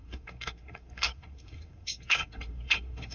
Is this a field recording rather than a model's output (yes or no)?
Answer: no